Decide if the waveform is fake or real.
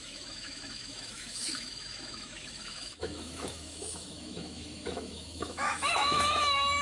fake